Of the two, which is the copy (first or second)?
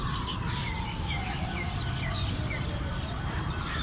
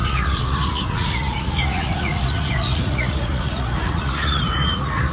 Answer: second